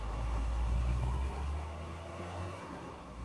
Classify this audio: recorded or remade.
remade